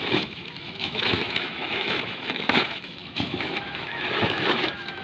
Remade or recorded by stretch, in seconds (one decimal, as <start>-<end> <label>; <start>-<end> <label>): 0.0-5.0 remade